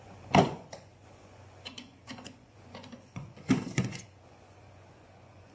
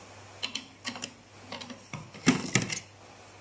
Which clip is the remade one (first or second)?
first